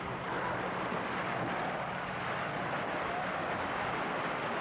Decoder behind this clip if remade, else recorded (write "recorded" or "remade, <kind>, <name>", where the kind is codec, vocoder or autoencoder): recorded